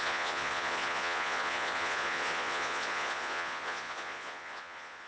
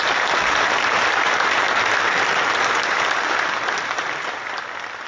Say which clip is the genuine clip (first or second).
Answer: second